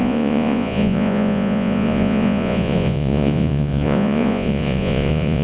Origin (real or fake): fake